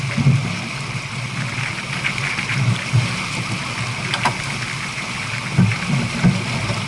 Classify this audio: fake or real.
real